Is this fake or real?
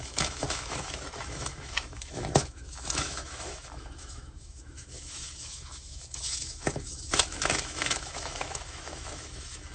fake